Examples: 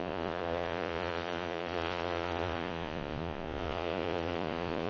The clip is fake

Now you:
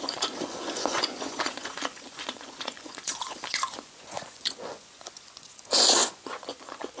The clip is fake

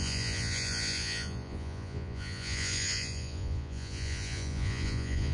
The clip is fake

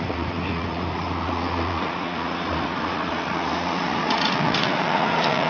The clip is fake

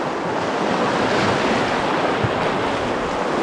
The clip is real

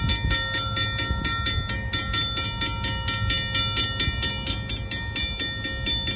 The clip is real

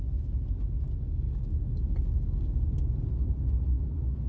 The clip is real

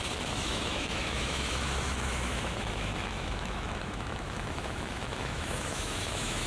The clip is fake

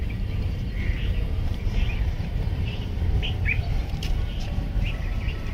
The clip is fake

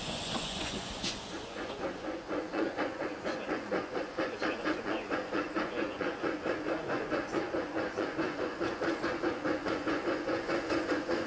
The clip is fake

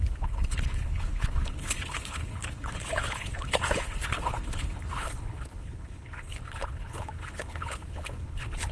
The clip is fake